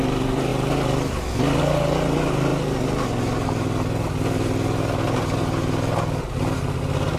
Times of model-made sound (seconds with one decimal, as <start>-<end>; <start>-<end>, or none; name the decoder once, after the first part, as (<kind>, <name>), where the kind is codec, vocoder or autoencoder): none